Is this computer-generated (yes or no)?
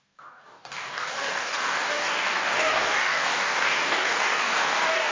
yes